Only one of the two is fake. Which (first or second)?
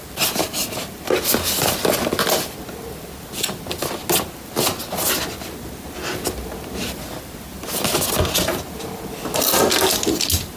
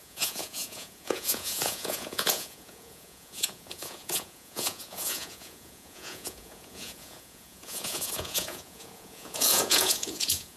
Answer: second